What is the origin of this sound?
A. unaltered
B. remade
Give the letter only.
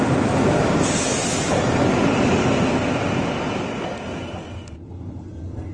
A